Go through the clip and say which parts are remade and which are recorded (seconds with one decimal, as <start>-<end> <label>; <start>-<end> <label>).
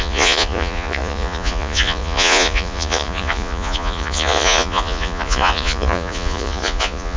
0.0-7.2 remade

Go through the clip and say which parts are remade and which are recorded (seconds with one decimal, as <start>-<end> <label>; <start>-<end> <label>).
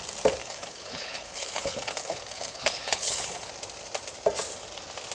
0.0-0.4 recorded; 0.4-3.5 remade; 3.5-5.1 recorded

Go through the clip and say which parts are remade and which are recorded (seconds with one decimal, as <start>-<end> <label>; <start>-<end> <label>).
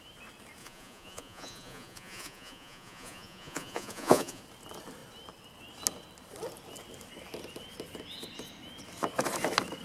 0.0-0.6 recorded; 0.6-4.4 remade; 4.4-9.8 recorded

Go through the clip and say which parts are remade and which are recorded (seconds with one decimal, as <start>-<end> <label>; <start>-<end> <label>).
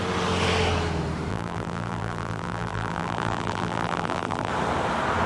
0.0-1.3 recorded; 1.3-4.5 remade; 4.5-5.3 recorded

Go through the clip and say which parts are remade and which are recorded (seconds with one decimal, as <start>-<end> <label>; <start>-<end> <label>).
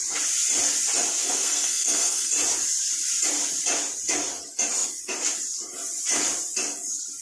0.0-1.2 recorded; 1.2-2.3 remade; 2.3-7.2 recorded